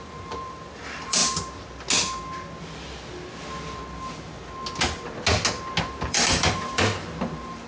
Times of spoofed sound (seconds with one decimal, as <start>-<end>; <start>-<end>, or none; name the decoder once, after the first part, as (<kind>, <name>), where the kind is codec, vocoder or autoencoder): 0.0-1.2 (vocoder, BigVGAN v2); 5.8-7.7